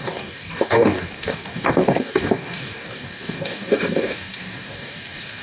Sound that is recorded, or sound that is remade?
remade